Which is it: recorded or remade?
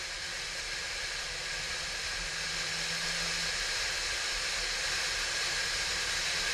recorded